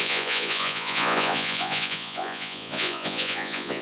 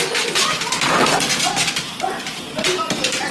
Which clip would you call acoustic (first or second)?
second